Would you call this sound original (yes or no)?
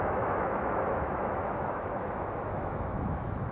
no